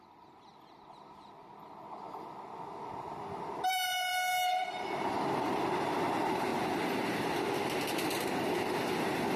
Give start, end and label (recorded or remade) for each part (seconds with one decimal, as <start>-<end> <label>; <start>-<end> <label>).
0.0-9.4 recorded